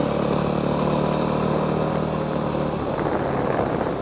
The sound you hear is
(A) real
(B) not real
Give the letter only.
A